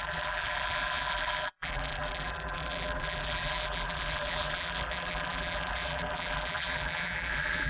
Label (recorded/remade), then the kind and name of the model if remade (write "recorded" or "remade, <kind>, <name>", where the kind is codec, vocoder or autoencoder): remade, vocoder, BigVGAN v2